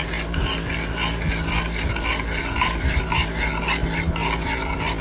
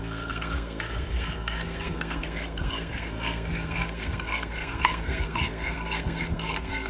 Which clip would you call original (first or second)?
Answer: first